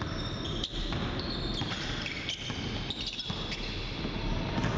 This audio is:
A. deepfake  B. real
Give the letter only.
B